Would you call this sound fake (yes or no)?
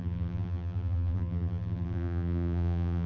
yes